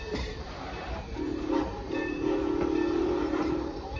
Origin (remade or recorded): remade